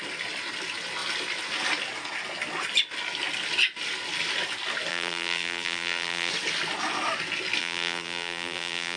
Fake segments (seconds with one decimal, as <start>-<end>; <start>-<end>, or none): 4.9-6.3; 7.6-9.0